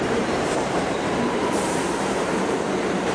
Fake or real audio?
fake